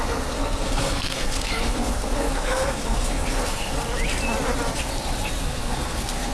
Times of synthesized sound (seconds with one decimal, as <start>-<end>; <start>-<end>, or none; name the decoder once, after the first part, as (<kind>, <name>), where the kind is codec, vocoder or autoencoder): 0.0-3.7 (codec, SNAC); 5.4-6.3